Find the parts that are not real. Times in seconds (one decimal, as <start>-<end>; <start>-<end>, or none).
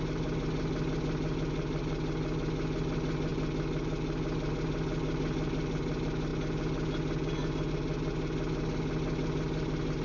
none